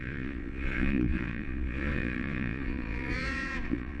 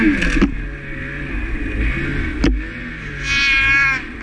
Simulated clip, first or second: first